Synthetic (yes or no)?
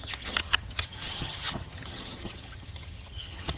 yes